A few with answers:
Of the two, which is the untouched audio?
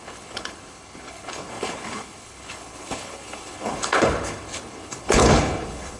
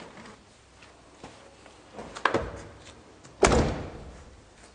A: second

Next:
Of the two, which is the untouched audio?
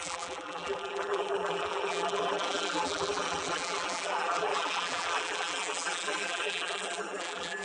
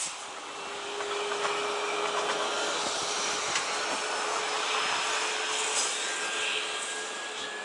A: second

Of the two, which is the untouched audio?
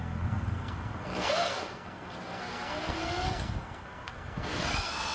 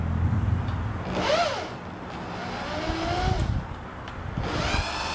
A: second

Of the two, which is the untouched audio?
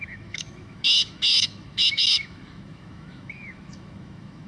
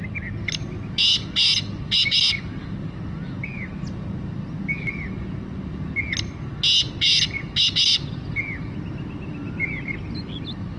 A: second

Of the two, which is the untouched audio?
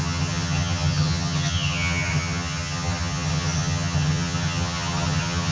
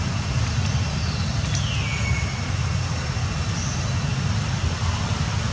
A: second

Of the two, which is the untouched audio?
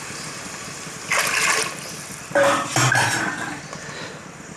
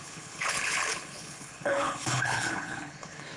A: first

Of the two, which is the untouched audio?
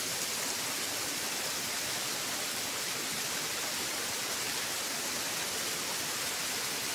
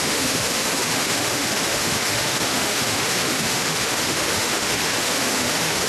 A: first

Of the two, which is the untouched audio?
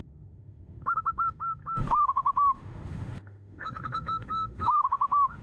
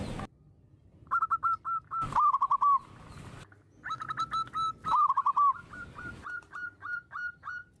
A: second